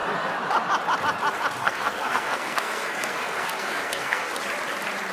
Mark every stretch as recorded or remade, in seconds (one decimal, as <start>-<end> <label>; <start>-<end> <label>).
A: 0.0-1.6 recorded; 1.6-4.3 remade; 4.3-5.1 recorded